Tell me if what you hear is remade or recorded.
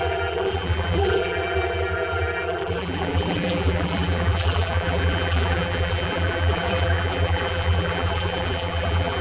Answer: remade